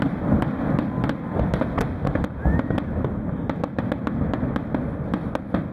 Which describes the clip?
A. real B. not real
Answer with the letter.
A